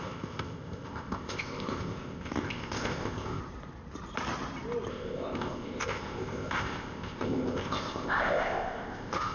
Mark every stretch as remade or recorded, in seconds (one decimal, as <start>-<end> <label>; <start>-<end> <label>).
0.0-3.4 remade; 3.4-4.9 recorded; 4.9-9.3 remade